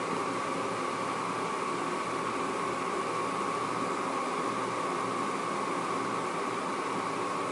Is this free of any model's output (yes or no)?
yes